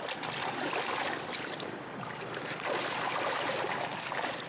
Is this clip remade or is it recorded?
recorded